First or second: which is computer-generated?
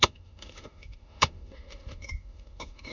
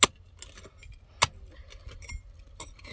first